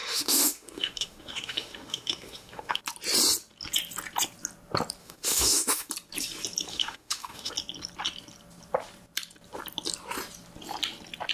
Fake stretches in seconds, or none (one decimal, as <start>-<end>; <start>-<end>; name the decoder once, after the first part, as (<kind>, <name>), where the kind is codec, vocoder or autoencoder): 0.0-2.8 (autoencoder, DAC-VAE); 5.0-5.9; 6.7-7.5